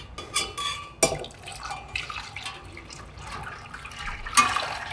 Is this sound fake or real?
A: real